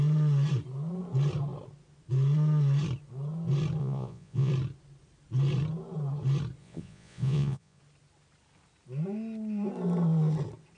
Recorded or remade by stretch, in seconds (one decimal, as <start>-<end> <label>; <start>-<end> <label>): 0.0-3.8 recorded; 3.8-4.5 remade; 4.5-6.6 recorded; 6.6-7.8 remade; 7.8-10.8 recorded

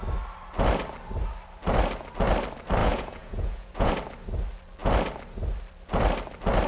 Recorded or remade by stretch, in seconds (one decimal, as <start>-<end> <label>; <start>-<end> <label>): 0.0-2.8 recorded; 2.8-3.9 remade; 3.9-6.7 recorded

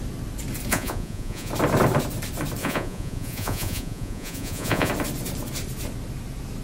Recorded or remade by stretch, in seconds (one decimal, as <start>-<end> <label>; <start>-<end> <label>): 0.0-0.7 recorded; 0.7-1.5 remade; 1.5-2.6 recorded; 2.6-4.9 remade; 4.9-6.6 recorded

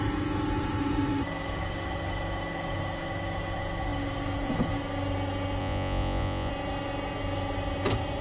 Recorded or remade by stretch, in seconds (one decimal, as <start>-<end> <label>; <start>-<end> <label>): 0.0-5.6 recorded; 5.6-6.5 remade; 6.5-8.2 recorded

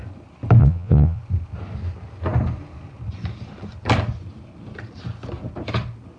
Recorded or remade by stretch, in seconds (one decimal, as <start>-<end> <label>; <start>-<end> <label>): 0.0-0.6 recorded; 0.6-1.2 remade; 1.2-6.2 recorded